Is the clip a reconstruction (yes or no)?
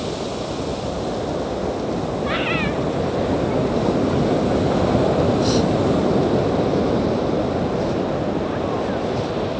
no